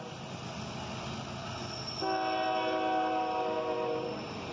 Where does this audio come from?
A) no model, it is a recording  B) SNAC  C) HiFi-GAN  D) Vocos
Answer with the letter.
A